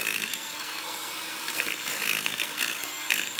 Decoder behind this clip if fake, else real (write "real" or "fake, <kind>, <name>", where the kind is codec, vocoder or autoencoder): fake, codec, SNAC